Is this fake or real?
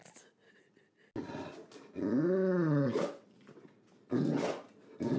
real